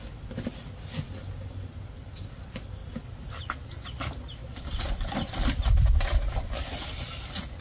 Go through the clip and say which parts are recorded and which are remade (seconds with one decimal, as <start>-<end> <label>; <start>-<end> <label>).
0.0-4.4 recorded; 4.4-7.0 remade; 7.0-7.6 recorded